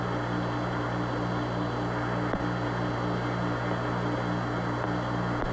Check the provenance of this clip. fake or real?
real